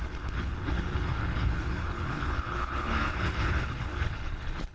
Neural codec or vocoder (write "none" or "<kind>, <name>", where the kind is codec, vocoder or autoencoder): codec, HILCodec